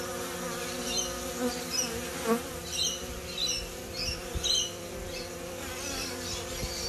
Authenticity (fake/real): real